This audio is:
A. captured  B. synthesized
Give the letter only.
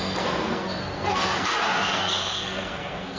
B